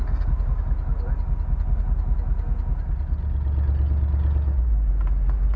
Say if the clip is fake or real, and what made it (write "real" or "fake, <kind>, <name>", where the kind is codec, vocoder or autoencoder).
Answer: real